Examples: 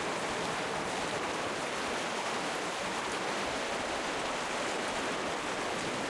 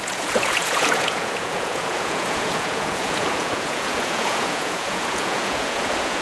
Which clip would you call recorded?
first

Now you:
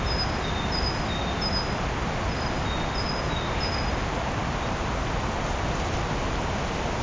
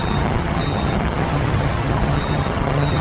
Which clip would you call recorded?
first